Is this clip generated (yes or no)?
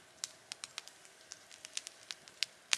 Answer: no